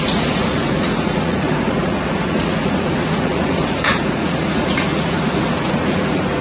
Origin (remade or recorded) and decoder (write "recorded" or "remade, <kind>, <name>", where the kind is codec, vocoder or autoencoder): remade, vocoder, Vocos